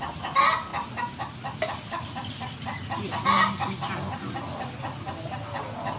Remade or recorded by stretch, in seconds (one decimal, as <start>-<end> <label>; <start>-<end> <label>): 0.0-6.0 recorded